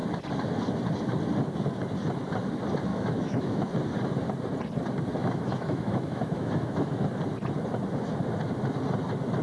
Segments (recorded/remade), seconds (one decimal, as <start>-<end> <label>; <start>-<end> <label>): 0.0-2.9 recorded; 2.9-3.7 remade; 3.7-5.2 recorded; 5.2-7.0 remade; 7.0-9.4 recorded